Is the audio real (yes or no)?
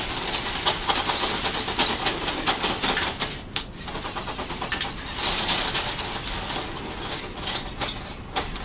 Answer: yes